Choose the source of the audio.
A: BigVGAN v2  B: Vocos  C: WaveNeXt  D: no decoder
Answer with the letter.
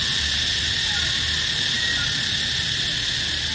D